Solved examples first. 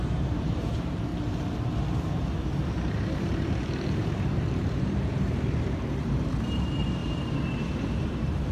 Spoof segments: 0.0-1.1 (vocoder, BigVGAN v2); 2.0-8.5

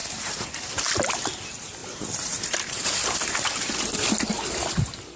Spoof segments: 0.0-5.2 (vocoder, BigVGAN v2)

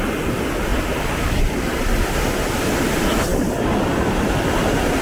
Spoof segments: none

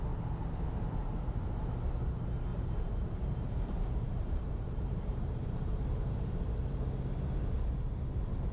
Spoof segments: 1.0-1.7 (vocoder, BigVGAN v2); 2.5-6.7

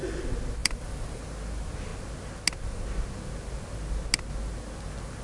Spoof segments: 0.6-1.2 (vocoder, BigVGAN v2)

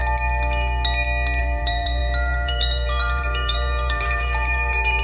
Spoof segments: 1.4-5.0 (vocoder, BigVGAN v2)

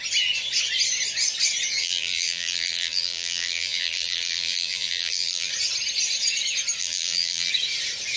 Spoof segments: 1.8-5.5 (vocoder, BigVGAN v2); 6.8-7.5